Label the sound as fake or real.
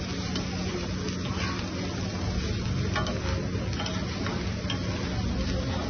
real